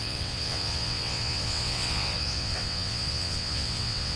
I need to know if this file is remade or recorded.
remade